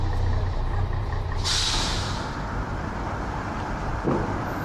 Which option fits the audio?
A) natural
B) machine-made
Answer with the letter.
B